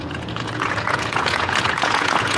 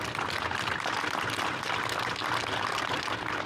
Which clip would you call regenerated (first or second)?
first